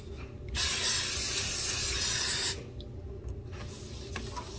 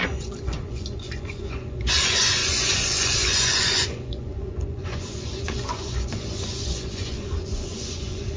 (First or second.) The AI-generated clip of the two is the second